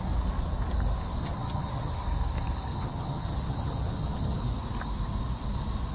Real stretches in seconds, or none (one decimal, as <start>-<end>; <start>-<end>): 0.0-1.2; 1.9-2.7; 4.4-5.9

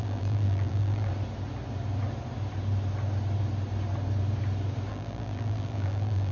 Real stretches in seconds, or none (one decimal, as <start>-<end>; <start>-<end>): 1.1-4.9